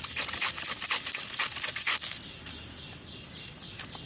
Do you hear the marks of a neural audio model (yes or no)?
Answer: no